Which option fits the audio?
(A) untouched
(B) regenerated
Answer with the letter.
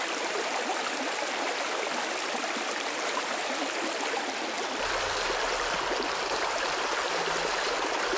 A